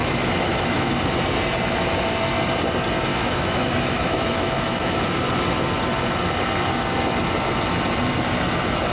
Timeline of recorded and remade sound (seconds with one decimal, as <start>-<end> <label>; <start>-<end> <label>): 0.0-0.9 remade; 0.9-3.1 recorded; 3.1-5.0 remade; 5.0-8.9 recorded